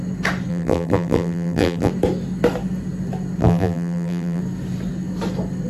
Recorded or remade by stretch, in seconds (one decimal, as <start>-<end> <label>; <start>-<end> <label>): 0.0-0.5 recorded; 0.5-1.9 remade; 1.9-3.4 recorded; 3.4-4.4 remade; 4.4-5.7 recorded